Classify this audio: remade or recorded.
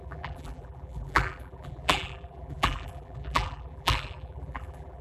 remade